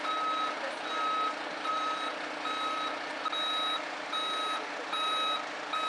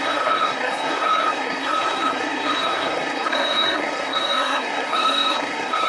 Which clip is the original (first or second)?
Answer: first